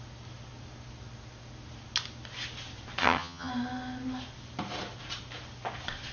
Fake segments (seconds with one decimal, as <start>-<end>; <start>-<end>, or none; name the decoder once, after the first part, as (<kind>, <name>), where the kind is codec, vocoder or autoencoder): 3.0-3.5 (vocoder, HiFi-GAN)